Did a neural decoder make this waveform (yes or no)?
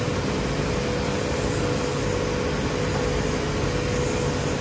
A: no